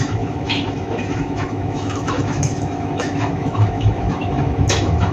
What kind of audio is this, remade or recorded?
remade